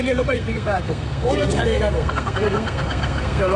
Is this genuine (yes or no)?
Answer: no